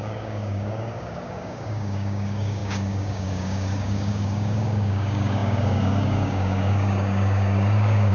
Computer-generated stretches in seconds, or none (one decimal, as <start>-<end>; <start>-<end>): 0.0-8.1